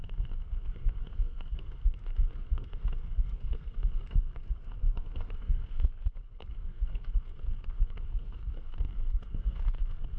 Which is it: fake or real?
fake